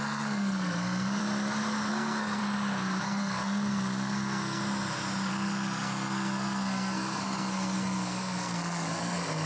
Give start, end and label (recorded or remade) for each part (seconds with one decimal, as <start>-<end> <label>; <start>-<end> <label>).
0.0-1.2 remade; 1.2-1.9 recorded; 1.9-2.4 remade; 2.4-3.0 recorded; 3.0-4.6 remade; 4.6-5.3 recorded; 5.3-9.5 remade

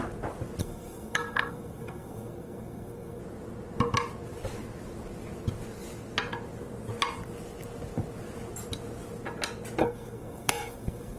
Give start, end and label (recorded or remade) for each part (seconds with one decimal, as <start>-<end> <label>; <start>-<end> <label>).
0.0-0.6 recorded; 0.6-3.2 remade; 3.2-9.8 recorded; 9.8-11.2 remade